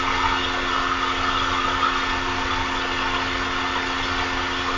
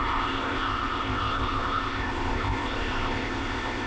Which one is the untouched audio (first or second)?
first